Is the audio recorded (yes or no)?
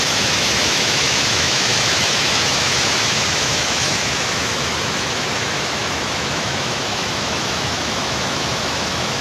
no